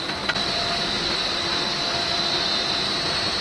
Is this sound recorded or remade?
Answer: recorded